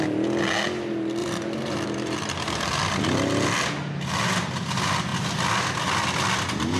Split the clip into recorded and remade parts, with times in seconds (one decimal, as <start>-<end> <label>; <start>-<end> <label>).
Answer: 0.0-1.2 recorded; 1.2-2.8 remade; 2.8-6.8 recorded

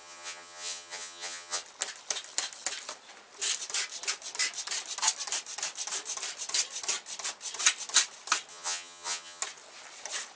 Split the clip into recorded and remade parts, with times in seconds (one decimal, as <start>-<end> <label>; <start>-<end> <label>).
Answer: 0.0-1.6 remade; 1.6-8.5 recorded; 8.5-9.4 remade; 9.4-10.4 recorded

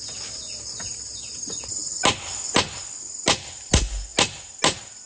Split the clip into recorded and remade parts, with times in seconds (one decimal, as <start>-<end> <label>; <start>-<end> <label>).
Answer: 0.0-5.1 recorded

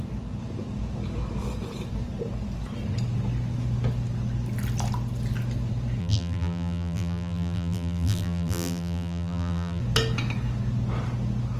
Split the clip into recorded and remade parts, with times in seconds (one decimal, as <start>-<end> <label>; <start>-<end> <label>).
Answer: 0.0-6.0 recorded; 6.0-9.8 remade; 9.8-11.6 recorded

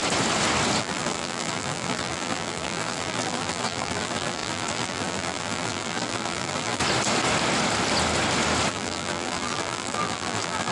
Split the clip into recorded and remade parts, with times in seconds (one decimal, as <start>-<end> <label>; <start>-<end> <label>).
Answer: 0.0-0.8 recorded; 0.8-6.8 remade; 6.8-8.7 recorded; 8.7-10.7 remade